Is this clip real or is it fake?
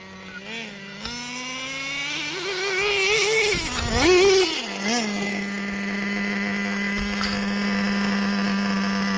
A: real